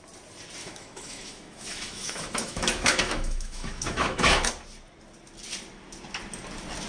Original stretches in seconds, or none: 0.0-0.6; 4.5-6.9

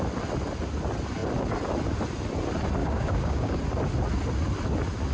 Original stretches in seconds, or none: 0.0-2.8; 3.6-5.1